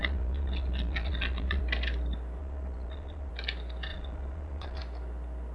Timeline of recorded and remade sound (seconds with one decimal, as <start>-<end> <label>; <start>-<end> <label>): 0.0-1.6 remade; 1.6-2.4 recorded; 2.4-3.3 remade; 3.3-3.9 recorded; 3.9-4.8 remade; 4.8-5.5 recorded